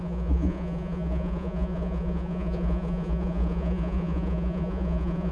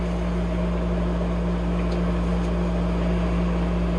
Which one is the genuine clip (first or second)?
second